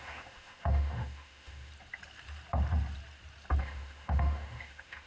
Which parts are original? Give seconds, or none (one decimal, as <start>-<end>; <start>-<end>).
1.7-3.6